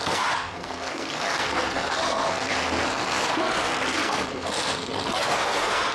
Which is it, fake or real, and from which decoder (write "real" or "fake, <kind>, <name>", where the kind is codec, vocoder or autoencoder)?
fake, codec, SNAC